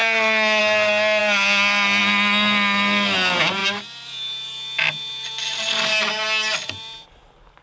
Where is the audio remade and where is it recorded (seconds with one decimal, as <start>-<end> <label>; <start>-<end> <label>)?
0.0-7.6 recorded